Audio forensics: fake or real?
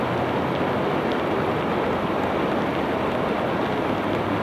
real